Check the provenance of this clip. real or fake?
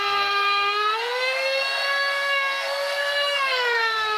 fake